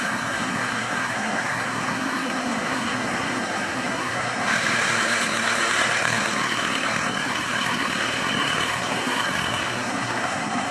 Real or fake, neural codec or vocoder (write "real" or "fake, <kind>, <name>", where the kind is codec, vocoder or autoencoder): fake, codec, SNAC